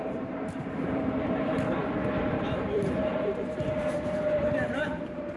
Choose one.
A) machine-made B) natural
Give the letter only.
A